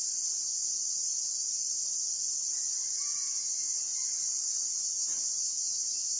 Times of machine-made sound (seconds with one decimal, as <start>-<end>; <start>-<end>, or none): 3.3-3.9; 4.8-6.2